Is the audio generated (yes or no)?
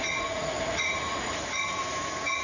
yes